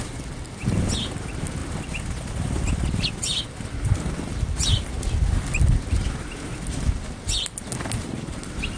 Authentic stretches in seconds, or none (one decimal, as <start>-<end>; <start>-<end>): 0.0-8.8